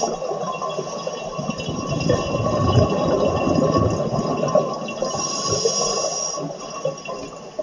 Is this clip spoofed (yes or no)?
no